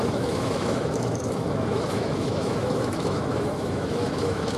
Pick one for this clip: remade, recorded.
remade